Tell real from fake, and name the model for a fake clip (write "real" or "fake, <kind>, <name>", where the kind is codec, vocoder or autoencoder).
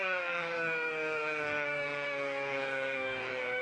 fake, codec, DAC